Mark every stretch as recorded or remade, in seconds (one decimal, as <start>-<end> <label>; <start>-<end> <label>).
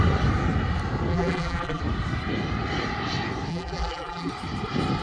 0.0-1.1 recorded; 1.1-1.8 remade; 1.8-3.5 recorded; 3.5-4.3 remade; 4.3-5.0 recorded